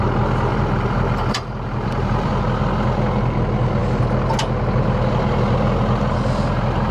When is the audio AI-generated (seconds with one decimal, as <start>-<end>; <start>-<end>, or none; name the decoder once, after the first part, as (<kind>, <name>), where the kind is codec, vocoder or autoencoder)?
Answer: 0.5-2.4 (vocoder, BigVGAN v2)